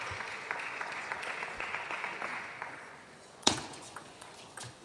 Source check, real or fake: fake